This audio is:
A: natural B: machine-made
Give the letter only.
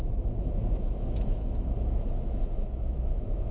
B